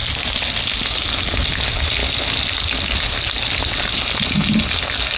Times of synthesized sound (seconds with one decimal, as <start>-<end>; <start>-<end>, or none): none